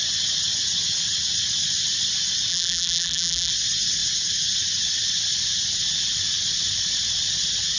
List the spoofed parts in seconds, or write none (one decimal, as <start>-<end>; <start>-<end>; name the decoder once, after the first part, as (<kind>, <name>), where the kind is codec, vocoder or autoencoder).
2.5-3.5 (vocoder, BigVGAN v2)

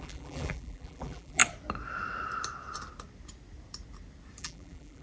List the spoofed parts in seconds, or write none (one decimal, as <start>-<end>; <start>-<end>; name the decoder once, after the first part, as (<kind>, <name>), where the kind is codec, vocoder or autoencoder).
0.0-1.4 (vocoder, BigVGAN v2); 4.4-5.0

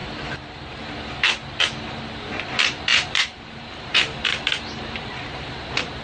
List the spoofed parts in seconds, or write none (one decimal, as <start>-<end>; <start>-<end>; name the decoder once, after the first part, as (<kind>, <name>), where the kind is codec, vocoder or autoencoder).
2.9-5.5 (vocoder, BigVGAN v2)

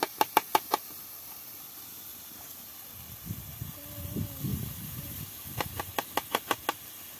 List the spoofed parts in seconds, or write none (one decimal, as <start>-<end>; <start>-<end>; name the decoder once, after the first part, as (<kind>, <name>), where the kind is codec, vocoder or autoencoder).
2.1-2.7 (vocoder, BigVGAN v2); 4.5-5.8

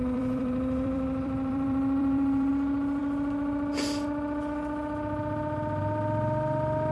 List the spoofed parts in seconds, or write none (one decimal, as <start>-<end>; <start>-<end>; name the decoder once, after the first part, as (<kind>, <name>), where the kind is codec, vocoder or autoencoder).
0.0-2.5 (vocoder, BigVGAN v2)

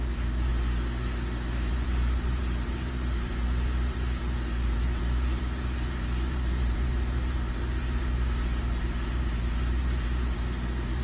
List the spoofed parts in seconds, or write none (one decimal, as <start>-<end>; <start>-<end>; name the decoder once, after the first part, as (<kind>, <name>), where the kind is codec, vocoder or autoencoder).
0.0-0.5 (vocoder, BigVGAN v2); 1.7-11.0

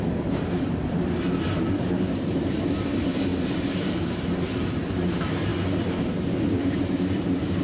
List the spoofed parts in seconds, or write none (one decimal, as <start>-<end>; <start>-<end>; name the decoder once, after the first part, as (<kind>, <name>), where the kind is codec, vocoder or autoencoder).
0.0-5.5 (vocoder, BigVGAN v2); 6.8-7.6